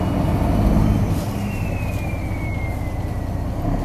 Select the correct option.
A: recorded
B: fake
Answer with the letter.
A